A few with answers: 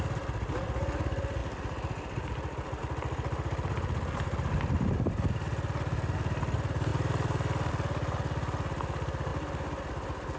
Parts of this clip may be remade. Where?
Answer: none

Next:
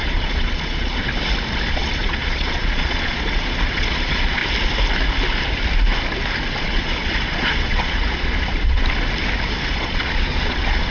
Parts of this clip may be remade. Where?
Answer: 0.0-1.0 (vocoder, Vocos); 1.7-4.4; 6.6-8.8; 9.7-10.9

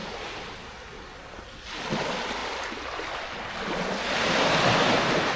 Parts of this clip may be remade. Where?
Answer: none

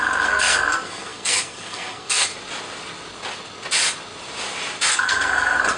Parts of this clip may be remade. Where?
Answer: 0.0-2.3 (codec, SNAC); 4.9-5.8